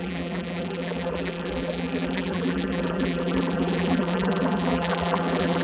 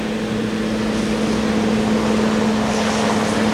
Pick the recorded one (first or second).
second